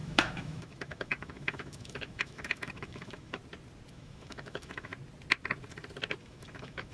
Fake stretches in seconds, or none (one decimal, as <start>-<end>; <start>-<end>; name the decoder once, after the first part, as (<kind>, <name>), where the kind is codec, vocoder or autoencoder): 0.0-3.4 (autoencoder, DAC-VAE); 3.9-4.9; 6.2-6.9